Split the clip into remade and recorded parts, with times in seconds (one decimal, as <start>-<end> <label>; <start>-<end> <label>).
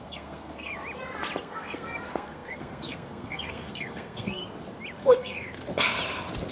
0.0-0.7 remade; 0.7-1.4 recorded; 1.4-4.4 remade; 4.4-5.0 recorded; 5.0-5.7 remade; 5.7-6.5 recorded